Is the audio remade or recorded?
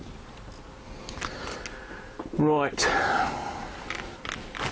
recorded